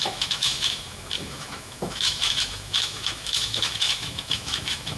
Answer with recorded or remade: remade